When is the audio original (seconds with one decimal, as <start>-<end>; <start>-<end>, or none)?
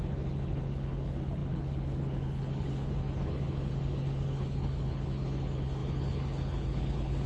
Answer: none